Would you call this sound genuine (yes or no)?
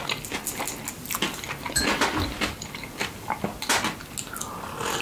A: yes